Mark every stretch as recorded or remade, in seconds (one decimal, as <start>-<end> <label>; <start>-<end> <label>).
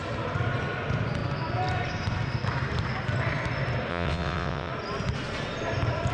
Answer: 0.0-3.9 recorded; 3.9-4.7 remade; 4.7-6.1 recorded